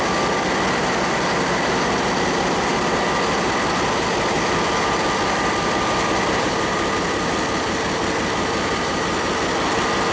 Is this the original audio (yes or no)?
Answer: yes